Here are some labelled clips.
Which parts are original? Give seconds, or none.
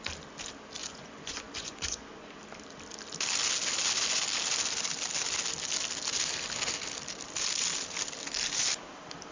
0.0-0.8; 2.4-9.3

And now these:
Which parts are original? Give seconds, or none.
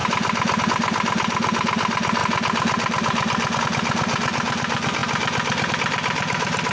0.0-6.7